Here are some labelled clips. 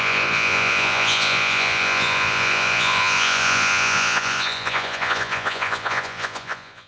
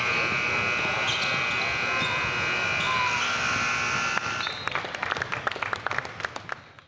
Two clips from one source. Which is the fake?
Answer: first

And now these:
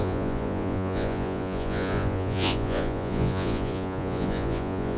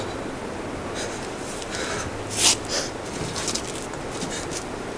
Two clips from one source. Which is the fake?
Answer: first